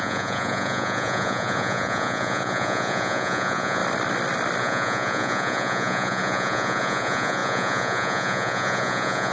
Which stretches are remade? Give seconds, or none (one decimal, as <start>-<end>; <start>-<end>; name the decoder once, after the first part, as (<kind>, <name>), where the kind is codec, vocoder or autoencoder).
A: 0.0-3.8 (vocoder, Vocos); 4.6-9.3